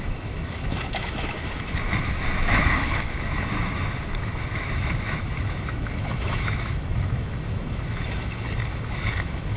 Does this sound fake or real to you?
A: fake